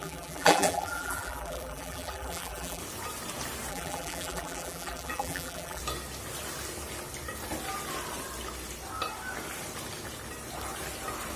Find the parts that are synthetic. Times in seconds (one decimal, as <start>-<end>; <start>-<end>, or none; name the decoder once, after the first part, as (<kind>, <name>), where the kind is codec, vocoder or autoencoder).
0.0-2.8 (vocoder, BigVGAN v2); 3.7-5.8